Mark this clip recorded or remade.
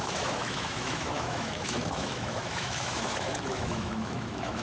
remade